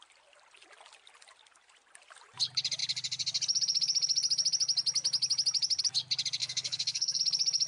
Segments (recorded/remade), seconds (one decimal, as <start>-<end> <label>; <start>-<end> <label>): 0.0-6.4 recorded; 6.4-7.2 remade; 7.2-7.7 recorded